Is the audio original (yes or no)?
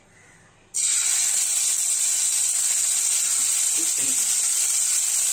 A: yes